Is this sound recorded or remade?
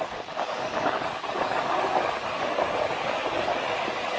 remade